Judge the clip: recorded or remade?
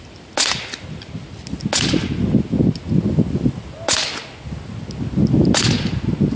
recorded